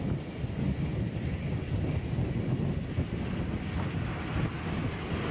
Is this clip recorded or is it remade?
recorded